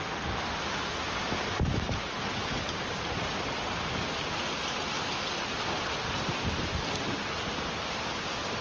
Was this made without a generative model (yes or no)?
yes